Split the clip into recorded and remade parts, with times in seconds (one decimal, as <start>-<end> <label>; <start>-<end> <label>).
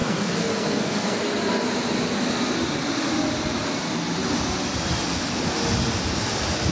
0.0-1.2 remade; 1.2-6.7 recorded